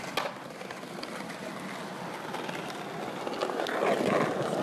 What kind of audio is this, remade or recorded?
recorded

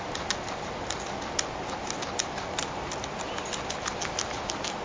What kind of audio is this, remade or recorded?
recorded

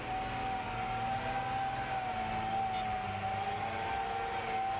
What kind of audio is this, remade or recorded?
recorded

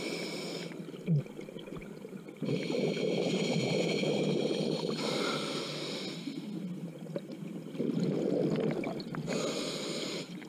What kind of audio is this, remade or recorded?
recorded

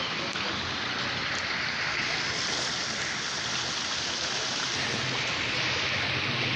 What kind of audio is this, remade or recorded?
recorded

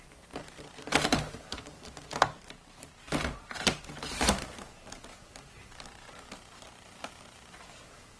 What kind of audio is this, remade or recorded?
recorded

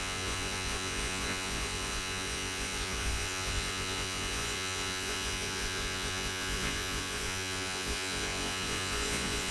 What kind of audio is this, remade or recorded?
remade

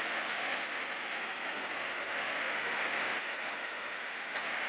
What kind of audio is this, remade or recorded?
remade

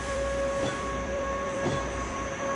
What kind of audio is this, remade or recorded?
remade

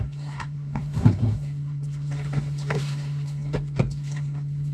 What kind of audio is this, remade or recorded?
remade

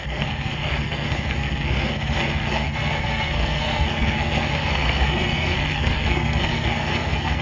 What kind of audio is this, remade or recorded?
remade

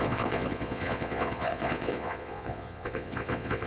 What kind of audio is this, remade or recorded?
remade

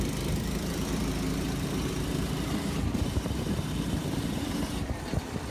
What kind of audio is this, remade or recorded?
remade